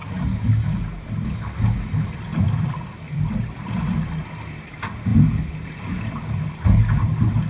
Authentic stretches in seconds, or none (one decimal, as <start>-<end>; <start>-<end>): 0.0-2.3; 3.8-5.1; 6.3-7.5